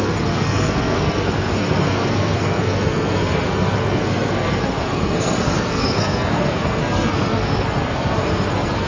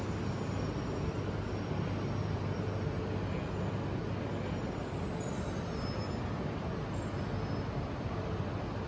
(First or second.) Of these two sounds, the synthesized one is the first